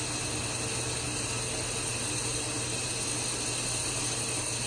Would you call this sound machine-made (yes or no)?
no